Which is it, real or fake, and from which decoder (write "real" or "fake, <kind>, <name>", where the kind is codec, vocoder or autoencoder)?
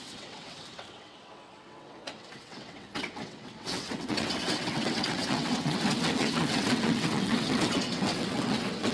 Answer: fake, vocoder, WaveNeXt